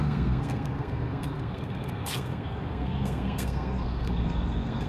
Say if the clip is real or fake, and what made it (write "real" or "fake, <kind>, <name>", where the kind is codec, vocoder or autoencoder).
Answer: fake, codec, SNAC